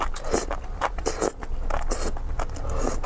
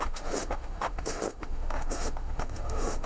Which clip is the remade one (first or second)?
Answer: second